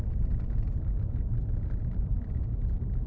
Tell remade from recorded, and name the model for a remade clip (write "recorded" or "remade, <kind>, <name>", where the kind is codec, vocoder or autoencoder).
remade, vocoder, BigVGAN v2